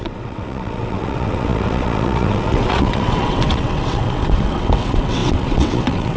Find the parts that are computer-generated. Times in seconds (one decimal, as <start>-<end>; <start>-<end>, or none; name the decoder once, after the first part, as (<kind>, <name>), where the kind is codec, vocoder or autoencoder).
0.0-6.2 (vocoder, WaveNeXt)